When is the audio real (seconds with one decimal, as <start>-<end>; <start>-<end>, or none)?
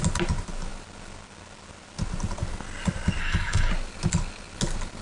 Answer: 0.0-3.2; 3.7-5.0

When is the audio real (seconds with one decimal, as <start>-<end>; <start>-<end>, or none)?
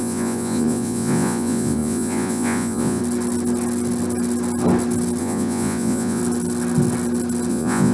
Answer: 3.0-5.2; 6.2-7.5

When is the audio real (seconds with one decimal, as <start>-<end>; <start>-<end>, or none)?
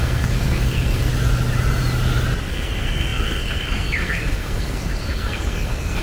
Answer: 1.1-2.4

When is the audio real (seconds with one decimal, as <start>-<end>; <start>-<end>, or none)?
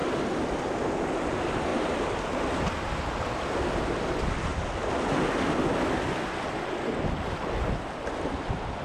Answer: 0.6-8.8